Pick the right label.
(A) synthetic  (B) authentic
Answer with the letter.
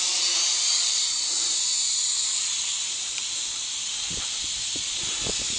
A